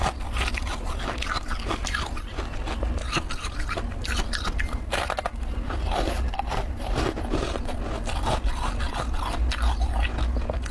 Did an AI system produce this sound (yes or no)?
no